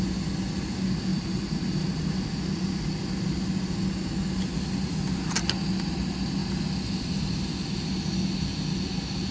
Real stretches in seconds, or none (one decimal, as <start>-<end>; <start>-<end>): 0.0-1.1; 2.1-9.3